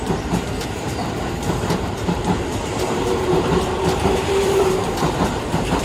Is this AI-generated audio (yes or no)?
yes